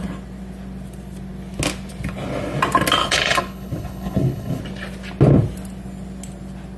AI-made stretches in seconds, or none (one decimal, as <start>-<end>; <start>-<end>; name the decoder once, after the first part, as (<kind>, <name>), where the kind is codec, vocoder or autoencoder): 3.0-4.6 (codec, HILCodec)